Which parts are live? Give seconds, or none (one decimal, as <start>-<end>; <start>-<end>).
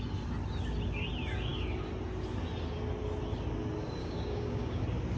0.0-4.0; 4.8-5.2